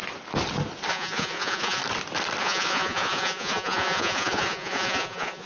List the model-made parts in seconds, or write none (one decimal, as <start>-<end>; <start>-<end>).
0.9-1.8; 2.4-5.5